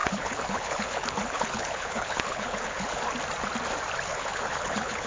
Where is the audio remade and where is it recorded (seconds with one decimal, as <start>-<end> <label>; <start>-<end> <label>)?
0.0-3.0 remade; 3.0-4.1 recorded; 4.1-5.1 remade